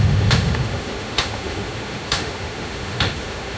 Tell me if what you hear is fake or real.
fake